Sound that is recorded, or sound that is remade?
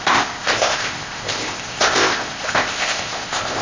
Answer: remade